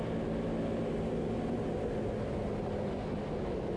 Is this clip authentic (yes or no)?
yes